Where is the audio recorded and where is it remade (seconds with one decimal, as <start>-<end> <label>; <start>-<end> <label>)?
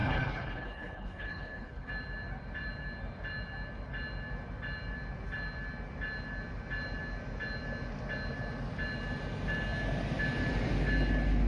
0.0-1.9 remade; 1.9-11.5 recorded